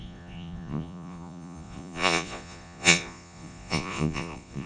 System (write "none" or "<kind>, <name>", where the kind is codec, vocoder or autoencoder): vocoder, Vocos